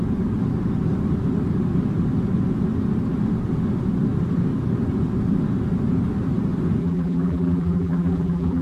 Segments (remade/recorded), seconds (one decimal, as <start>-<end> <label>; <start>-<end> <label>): 0.0-6.8 recorded; 6.8-8.6 remade